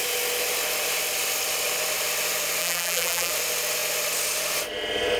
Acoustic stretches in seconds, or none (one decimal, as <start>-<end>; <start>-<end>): 0.0-2.6; 3.3-5.2